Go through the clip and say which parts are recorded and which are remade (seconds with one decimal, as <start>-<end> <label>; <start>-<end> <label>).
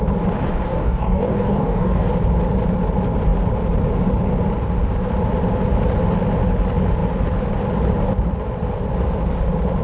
0.0-0.7 recorded; 0.7-2.1 remade; 2.1-9.8 recorded